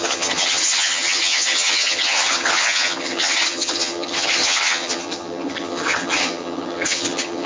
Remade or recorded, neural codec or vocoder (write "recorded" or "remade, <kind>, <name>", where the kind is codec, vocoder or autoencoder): remade, vocoder, HiFi-GAN